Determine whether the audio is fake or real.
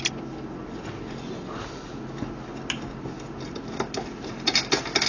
real